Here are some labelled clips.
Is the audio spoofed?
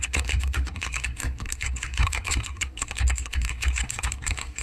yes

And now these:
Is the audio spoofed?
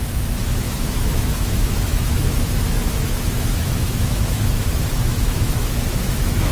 yes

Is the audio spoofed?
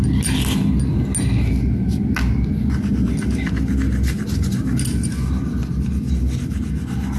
no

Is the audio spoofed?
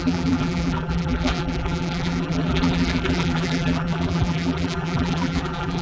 yes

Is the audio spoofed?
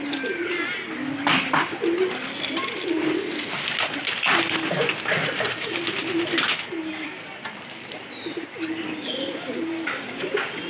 no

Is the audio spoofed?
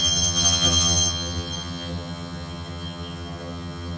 yes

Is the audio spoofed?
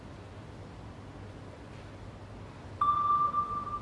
no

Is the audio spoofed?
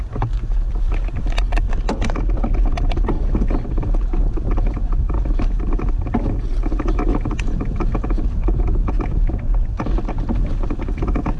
no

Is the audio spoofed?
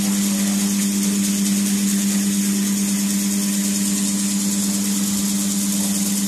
no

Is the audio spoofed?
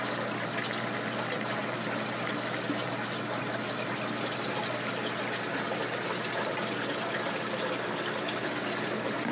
no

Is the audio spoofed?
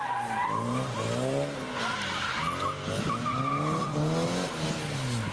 no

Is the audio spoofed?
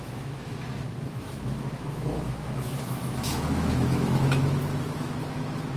yes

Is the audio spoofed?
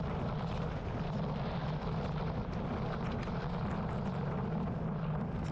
no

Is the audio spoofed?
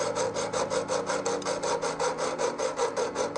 no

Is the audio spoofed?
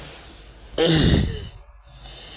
no